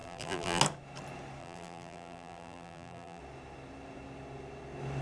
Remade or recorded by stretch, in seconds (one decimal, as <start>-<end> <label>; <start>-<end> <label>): 0.0-0.6 remade; 0.6-1.4 recorded; 1.4-3.2 remade; 3.2-5.0 recorded